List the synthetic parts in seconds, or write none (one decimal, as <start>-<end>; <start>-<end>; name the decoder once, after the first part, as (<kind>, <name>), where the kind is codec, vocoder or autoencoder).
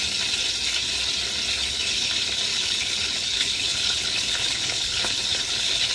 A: 1.6-2.1 (codec, HILCodec); 2.5-5.9